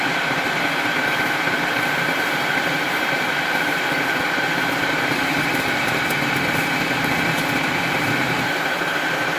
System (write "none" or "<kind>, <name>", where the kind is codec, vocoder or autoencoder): vocoder, BigVGAN v2